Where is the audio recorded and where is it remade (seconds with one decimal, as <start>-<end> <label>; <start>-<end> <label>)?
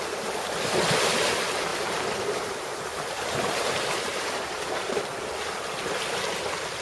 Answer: 0.0-1.7 recorded; 1.7-5.0 remade; 5.0-6.8 recorded